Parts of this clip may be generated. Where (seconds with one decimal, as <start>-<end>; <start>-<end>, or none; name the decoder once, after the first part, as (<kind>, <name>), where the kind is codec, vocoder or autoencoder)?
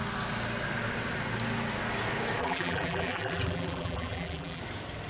2.4-4.6 (vocoder, BigVGAN v2)